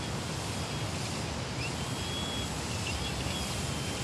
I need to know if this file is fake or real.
real